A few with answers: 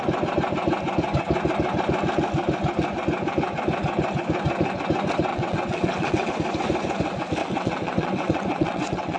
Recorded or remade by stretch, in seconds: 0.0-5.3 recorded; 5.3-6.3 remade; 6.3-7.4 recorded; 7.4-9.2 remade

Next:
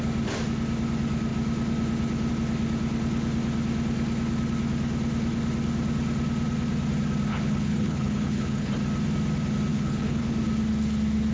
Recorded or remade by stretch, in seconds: 0.0-7.3 recorded; 7.3-8.7 remade; 8.7-9.7 recorded; 9.7-10.2 remade; 10.2-11.3 recorded

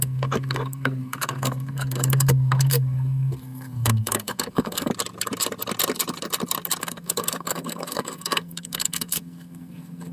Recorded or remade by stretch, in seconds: 0.0-4.9 remade; 4.9-6.8 recorded; 6.8-10.1 remade

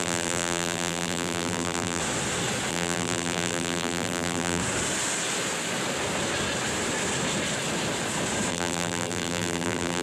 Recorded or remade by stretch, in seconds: 0.0-2.0 remade; 2.0-2.7 recorded; 2.7-4.6 remade; 4.6-8.5 recorded; 8.5-10.0 remade

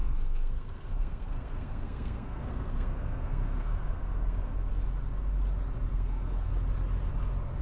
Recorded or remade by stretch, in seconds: 0.0-4.5 remade; 4.5-5.9 recorded; 5.9-6.5 remade; 6.5-7.6 recorded

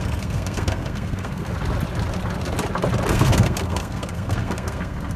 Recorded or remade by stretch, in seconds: 0.0-1.5 remade; 1.5-3.1 recorded; 3.1-5.2 remade

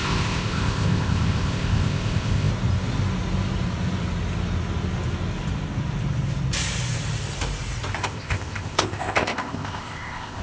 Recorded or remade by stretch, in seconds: 0.0-2.5 remade; 2.5-8.0 recorded; 8.0-10.4 remade